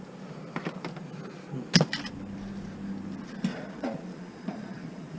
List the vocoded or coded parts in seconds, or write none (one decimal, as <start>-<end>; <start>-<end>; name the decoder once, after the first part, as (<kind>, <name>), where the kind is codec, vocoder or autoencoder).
3.5-5.2 (vocoder, Vocos)